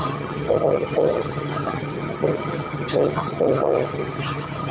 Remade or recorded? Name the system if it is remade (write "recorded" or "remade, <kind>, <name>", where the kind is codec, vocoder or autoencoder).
remade, vocoder, HiFi-GAN